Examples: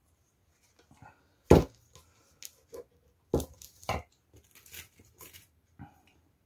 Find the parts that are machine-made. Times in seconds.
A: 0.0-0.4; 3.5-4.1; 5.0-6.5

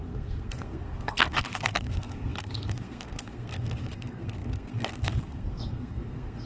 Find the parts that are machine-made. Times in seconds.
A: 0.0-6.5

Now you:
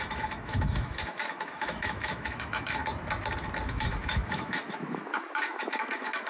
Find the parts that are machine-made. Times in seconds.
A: 0.0-2.8; 3.7-6.3

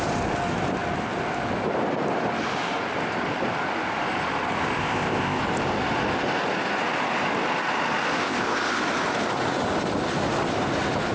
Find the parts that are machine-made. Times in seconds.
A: 4.8-5.4; 8.2-8.8

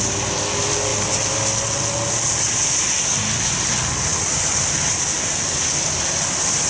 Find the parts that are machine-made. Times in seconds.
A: none

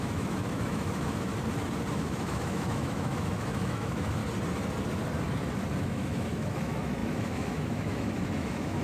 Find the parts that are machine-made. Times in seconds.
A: 0.0-1.3; 1.9-4.2; 5.8-8.8

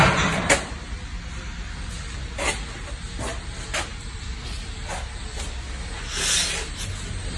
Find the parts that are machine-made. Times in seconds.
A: 3.9-4.4